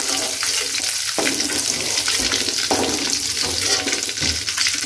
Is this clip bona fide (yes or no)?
yes